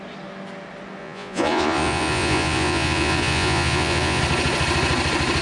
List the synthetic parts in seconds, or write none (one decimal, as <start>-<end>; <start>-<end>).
1.0-4.2